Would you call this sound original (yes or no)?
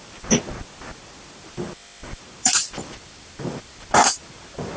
yes